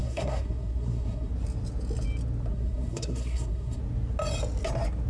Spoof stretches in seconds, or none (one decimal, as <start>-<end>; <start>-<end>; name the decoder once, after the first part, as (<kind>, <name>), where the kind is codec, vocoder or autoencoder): 0.0-1.3 (codec, SNAC); 2.5-3.8